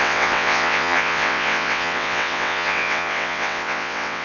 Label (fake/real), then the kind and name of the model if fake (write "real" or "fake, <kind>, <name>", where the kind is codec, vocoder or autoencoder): fake, vocoder, WaveNeXt